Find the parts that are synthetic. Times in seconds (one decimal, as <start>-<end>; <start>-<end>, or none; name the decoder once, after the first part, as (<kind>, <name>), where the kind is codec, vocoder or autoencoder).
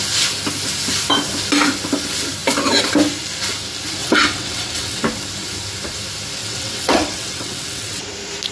4.0-5.0 (vocoder, WaveNeXt); 6.4-8.1